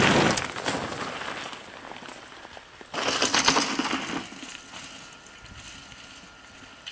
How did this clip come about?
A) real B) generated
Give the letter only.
A